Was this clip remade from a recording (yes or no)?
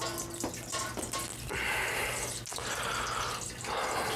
no